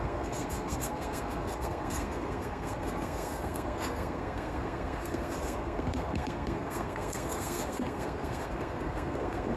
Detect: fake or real fake